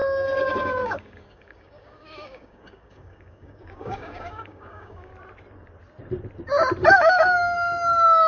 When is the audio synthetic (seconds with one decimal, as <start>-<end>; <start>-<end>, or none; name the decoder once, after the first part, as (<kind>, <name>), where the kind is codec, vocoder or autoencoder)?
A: 0.0-5.1 (codec, DAC); 6.9-8.3